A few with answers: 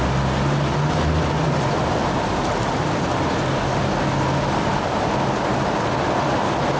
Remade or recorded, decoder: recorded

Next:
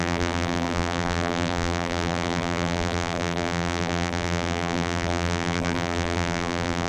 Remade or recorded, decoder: remade, vocoder, BigVGAN v2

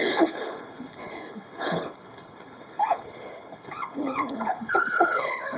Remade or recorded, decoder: remade, codec, HILCodec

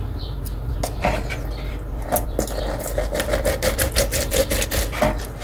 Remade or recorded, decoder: recorded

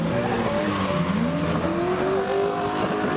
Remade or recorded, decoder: recorded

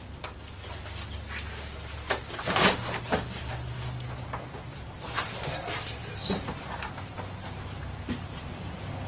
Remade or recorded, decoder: recorded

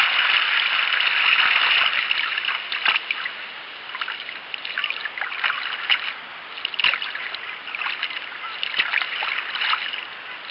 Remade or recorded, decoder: recorded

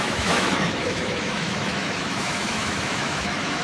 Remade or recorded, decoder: remade, autoencoder, DAC-VAE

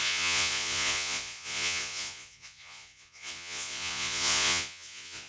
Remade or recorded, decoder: remade, vocoder, Vocos